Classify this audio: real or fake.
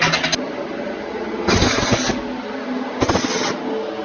real